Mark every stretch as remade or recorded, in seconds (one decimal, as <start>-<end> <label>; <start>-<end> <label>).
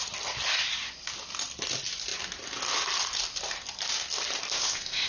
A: 0.0-4.5 recorded; 4.5-5.1 remade